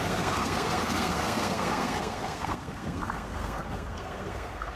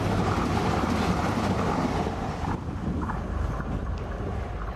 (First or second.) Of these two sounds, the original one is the second